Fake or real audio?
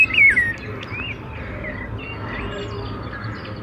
real